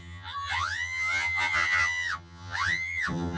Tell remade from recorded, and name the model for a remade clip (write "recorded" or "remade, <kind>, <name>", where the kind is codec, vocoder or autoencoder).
remade, vocoder, HiFi-GAN